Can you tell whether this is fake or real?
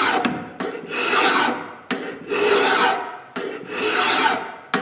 real